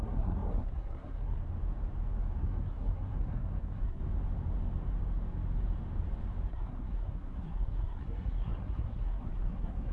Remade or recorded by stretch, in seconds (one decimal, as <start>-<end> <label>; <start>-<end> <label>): 0.0-1.4 remade; 1.4-2.4 recorded; 2.4-4.0 remade; 4.0-6.5 recorded; 6.5-9.9 remade